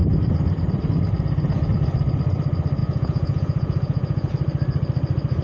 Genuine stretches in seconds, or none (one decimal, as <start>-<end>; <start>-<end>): 0.0-2.8; 4.3-5.4